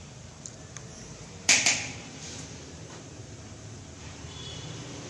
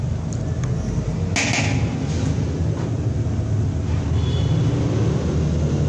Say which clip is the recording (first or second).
second